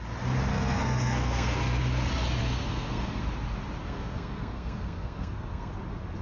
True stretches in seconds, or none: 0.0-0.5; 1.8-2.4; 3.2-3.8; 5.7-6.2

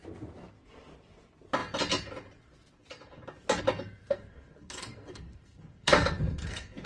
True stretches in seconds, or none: 0.0-4.0

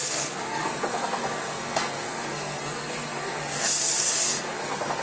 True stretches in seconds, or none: none

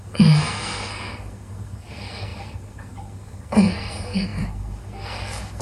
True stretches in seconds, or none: none